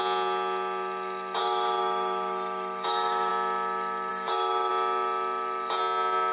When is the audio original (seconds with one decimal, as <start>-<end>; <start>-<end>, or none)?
0.0-1.4; 3.3-4.1; 4.7-6.3